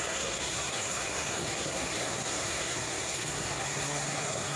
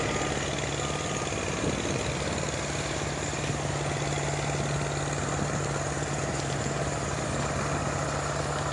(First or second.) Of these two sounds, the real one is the second